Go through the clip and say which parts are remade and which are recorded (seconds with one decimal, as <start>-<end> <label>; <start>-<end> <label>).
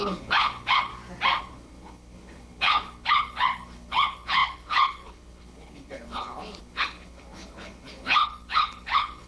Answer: 0.0-0.9 remade; 0.9-1.4 recorded; 1.4-9.3 remade